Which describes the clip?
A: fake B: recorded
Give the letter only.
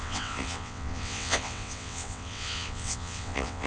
A